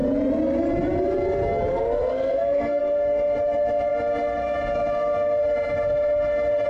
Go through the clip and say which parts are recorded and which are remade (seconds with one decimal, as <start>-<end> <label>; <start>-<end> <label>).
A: 0.0-1.7 recorded; 1.7-2.8 remade; 2.8-6.7 recorded